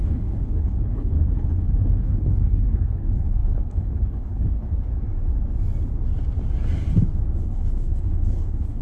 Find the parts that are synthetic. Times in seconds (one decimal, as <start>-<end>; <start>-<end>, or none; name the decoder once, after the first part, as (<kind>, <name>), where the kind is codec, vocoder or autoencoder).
0.0-4.9 (codec, HILCodec); 7.4-8.8

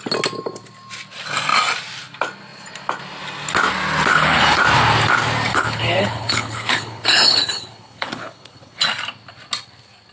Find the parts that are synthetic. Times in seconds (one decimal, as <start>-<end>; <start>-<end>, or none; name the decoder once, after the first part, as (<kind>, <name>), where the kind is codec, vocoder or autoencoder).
4.1-4.6 (codec, HILCodec); 5.5-8.8

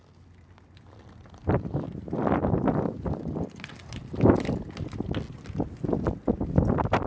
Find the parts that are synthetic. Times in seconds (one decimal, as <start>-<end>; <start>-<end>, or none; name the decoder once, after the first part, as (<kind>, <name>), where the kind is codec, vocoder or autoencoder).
none

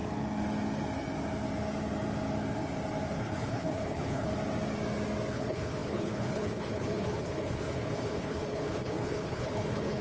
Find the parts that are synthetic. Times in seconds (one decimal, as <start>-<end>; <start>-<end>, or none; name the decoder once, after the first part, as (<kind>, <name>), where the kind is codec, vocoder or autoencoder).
3.2-4.3 (codec, HILCodec); 5.3-10.0

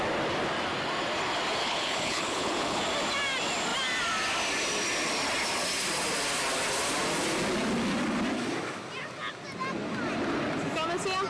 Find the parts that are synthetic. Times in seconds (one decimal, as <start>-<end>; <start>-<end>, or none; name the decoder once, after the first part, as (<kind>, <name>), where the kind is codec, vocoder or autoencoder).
1.6-2.8 (codec, HILCodec)